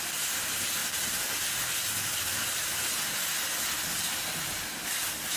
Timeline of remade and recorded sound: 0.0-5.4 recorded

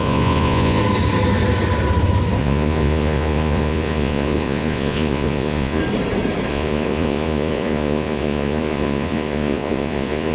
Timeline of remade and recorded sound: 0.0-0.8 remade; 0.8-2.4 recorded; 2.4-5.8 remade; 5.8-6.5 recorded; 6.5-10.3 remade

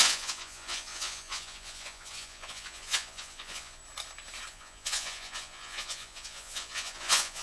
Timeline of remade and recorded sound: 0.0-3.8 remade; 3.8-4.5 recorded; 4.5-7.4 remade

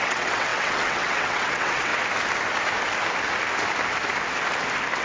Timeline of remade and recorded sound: 0.0-1.9 remade; 1.9-5.0 recorded

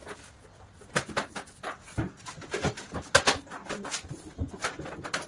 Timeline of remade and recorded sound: 0.0-3.6 recorded; 3.6-4.6 remade; 4.6-5.3 recorded

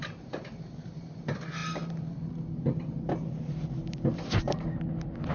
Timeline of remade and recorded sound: 0.0-5.3 recorded

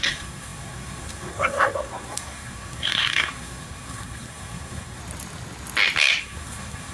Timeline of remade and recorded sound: 0.0-5.0 remade; 5.0-6.2 recorded; 6.2-6.9 remade